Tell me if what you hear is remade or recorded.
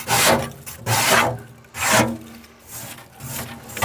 recorded